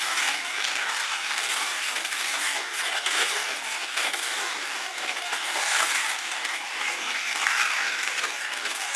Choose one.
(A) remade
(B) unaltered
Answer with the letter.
A